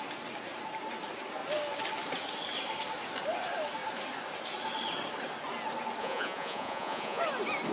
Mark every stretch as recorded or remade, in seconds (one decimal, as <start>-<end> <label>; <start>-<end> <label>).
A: 0.0-6.0 recorded; 6.0-7.2 remade; 7.2-7.7 recorded